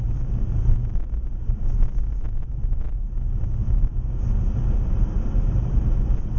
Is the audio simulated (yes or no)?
no